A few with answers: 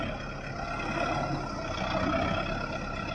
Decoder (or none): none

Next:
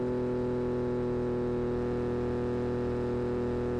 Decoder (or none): none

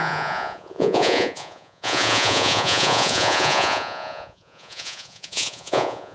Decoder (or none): vocoder, Vocos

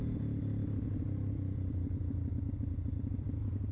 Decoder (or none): none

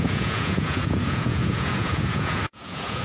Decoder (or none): vocoder, Vocos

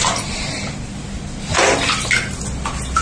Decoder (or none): none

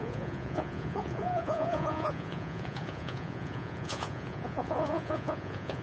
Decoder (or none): vocoder, Vocos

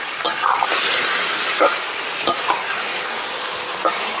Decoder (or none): none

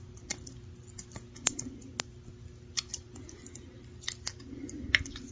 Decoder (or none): none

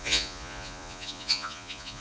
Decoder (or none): vocoder, Vocos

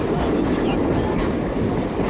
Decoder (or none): none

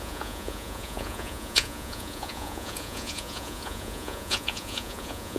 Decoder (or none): vocoder, Vocos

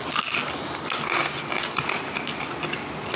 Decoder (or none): none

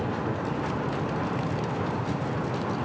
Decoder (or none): none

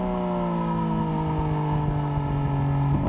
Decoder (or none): none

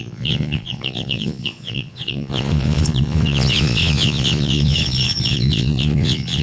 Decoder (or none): vocoder, Vocos